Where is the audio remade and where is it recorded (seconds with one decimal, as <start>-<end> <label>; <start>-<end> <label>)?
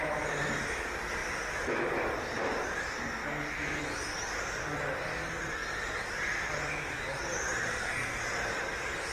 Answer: 0.0-3.2 recorded; 3.2-3.8 remade; 3.8-7.6 recorded; 7.6-8.2 remade; 8.2-9.1 recorded